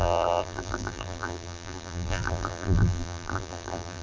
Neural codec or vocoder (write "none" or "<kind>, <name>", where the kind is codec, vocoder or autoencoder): vocoder, BigVGAN v2